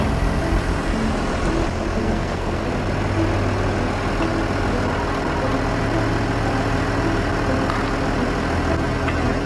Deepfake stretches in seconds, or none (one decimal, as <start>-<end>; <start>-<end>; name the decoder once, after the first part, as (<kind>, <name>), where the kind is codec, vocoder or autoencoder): 2.0-2.6 (codec, SNAC)